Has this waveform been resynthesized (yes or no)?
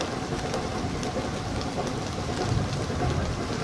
no